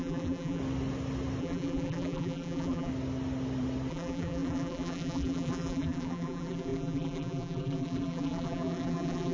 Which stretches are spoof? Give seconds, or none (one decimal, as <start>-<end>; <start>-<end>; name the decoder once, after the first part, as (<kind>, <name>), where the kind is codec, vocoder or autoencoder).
0.0-0.6 (vocoder, BigVGAN v2); 1.4-2.9; 3.9-9.3